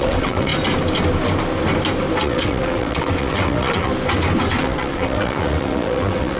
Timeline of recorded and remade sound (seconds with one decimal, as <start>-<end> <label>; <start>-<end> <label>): 0.0-0.5 remade; 0.5-2.2 recorded; 2.2-3.9 remade; 3.9-4.6 recorded; 4.6-6.4 remade